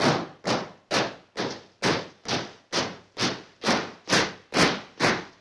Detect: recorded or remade recorded